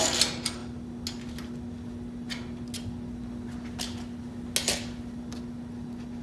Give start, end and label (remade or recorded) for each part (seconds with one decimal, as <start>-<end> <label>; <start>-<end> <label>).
0.0-6.2 recorded

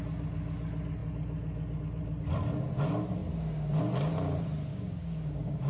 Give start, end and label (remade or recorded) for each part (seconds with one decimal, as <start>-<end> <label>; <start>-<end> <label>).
0.0-4.7 recorded; 4.7-5.7 remade

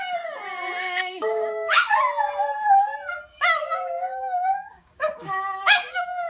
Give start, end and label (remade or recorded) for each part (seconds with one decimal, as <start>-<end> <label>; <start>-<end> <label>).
0.0-0.8 recorded; 0.8-2.0 remade; 2.0-3.3 recorded; 3.3-6.3 remade

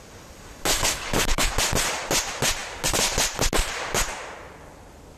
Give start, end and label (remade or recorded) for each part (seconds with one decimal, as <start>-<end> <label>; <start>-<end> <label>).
0.0-0.7 recorded; 0.7-1.5 remade; 1.5-5.2 recorded

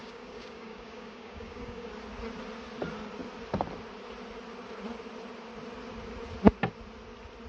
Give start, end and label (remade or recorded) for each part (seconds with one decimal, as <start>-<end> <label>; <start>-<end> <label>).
0.0-1.9 remade; 1.9-7.5 recorded

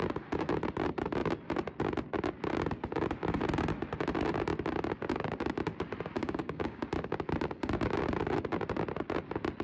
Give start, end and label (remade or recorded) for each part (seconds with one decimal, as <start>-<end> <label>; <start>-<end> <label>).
0.0-6.2 recorded; 6.2-6.8 remade; 6.8-9.6 recorded